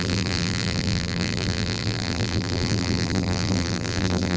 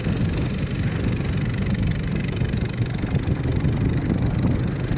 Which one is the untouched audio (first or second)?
second